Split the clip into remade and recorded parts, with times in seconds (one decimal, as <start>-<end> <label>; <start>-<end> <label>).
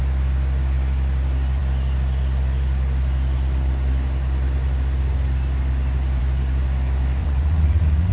0.0-7.2 recorded; 7.2-8.1 remade